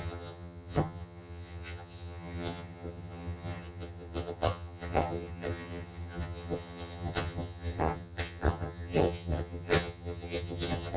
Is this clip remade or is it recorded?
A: remade